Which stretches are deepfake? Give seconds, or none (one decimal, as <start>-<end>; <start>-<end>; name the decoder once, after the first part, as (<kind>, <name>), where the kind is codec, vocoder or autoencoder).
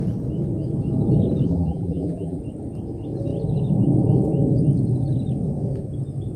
1.5-2.4 (vocoder, BigVGAN v2)